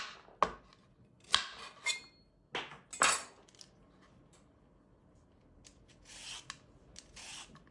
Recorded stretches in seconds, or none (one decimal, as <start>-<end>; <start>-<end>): 0.0-7.7